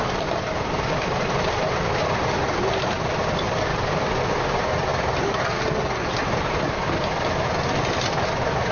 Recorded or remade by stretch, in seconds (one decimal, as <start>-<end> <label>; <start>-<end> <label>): 0.0-2.0 recorded; 2.0-2.9 remade; 2.9-3.7 recorded; 3.7-4.3 remade; 4.3-8.7 recorded